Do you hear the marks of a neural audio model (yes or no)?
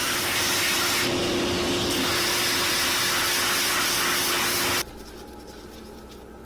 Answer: no